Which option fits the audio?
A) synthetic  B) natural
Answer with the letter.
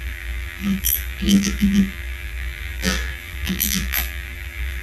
A